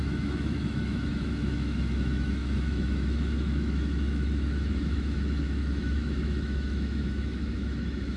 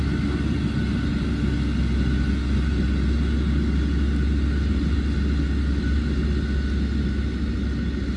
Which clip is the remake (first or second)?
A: first